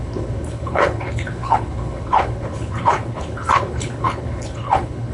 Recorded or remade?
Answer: remade